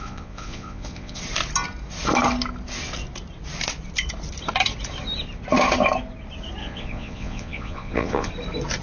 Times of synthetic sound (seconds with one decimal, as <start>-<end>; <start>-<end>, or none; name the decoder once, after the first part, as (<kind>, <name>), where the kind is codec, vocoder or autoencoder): 0.0-1.2 (vocoder, Vocos); 6.6-8.3